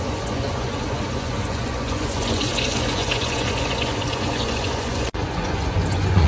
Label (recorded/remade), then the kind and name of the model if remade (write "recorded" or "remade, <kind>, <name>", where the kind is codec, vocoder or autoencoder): remade, vocoder, Vocos